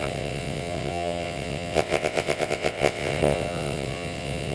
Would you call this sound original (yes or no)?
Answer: no